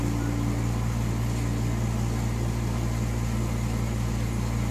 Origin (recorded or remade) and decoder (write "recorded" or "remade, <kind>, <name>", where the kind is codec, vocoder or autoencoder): recorded